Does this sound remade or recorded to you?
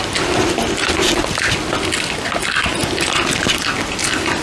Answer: recorded